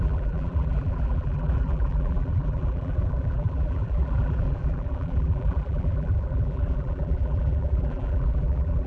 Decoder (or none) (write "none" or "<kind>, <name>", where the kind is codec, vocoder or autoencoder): vocoder, BigVGAN v2